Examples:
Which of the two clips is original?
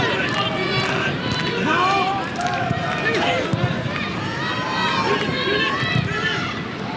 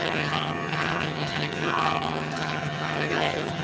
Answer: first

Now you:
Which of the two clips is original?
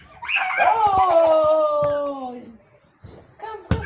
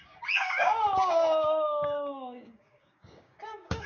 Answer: first